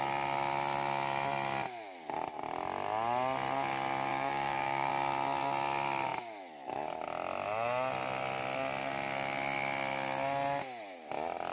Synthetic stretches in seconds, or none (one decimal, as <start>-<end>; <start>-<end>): 4.1-4.9